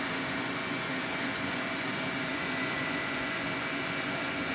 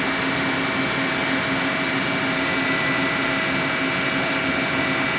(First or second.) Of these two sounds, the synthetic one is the first